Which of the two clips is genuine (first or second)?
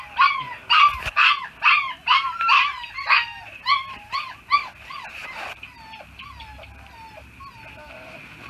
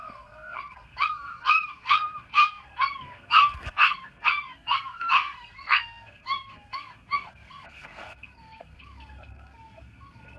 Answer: first